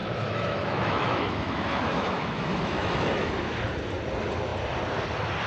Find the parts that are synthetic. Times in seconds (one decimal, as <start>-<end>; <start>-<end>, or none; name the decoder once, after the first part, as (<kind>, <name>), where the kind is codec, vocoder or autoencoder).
0.0-3.3 (autoencoder, DAC-VAE)